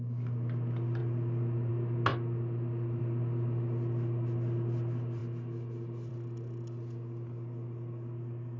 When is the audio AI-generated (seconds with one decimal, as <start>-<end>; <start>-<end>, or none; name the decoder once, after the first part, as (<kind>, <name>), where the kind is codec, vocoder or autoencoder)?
none